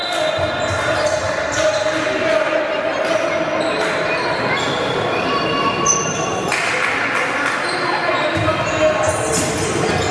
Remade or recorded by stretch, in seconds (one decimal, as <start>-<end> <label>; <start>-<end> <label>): 0.0-10.1 recorded